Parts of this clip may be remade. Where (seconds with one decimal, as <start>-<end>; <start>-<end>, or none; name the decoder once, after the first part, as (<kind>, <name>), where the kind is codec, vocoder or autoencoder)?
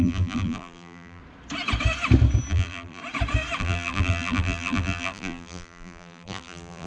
0.0-1.2 (vocoder, BigVGAN v2); 2.5-3.0; 3.6-6.9